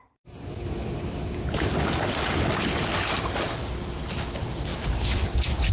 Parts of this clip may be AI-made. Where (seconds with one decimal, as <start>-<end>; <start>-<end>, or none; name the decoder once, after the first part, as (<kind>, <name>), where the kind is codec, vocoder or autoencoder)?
none